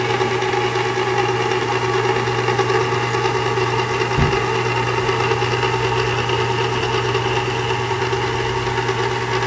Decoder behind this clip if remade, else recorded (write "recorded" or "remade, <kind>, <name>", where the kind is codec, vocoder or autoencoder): recorded